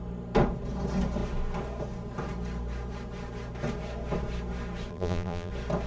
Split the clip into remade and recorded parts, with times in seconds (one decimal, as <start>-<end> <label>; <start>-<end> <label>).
0.0-4.9 recorded; 4.9-5.5 remade; 5.5-5.9 recorded